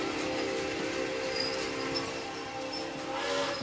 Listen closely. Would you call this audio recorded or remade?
recorded